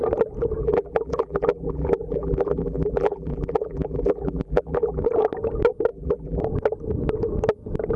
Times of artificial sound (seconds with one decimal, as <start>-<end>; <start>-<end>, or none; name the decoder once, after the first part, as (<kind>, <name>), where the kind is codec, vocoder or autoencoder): 0.6-5.0 (vocoder, BigVGAN v2); 5.9-6.4